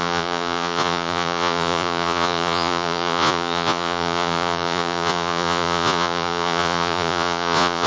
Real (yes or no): no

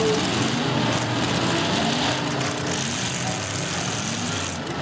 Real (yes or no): yes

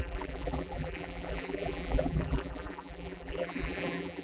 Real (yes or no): no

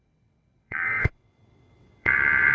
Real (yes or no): no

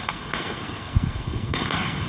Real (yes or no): no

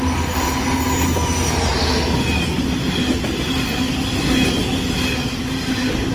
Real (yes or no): yes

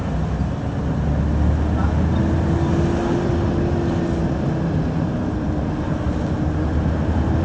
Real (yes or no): yes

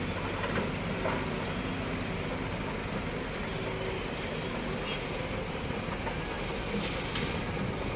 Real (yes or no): yes